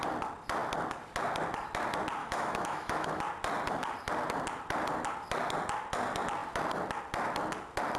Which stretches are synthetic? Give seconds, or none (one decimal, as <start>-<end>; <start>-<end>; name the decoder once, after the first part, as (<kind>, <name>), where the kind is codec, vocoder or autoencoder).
2.2-3.2 (autoencoder, DAC-VAE)